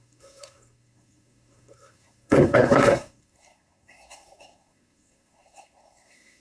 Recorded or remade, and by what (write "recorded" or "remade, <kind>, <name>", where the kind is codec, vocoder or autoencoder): remade, codec, SNAC